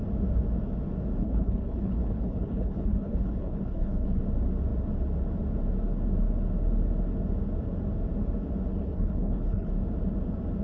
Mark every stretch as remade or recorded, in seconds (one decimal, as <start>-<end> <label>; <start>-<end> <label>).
0.0-1.2 recorded; 1.2-4.2 remade; 4.2-8.8 recorded; 8.8-9.7 remade; 9.7-10.6 recorded